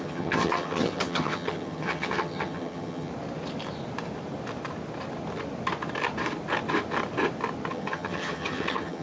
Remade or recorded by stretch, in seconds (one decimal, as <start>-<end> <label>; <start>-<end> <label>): 0.0-3.1 remade; 3.1-7.7 recorded; 7.7-9.0 remade